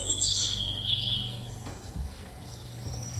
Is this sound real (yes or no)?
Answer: no